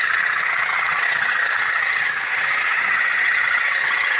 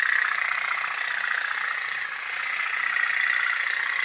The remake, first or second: first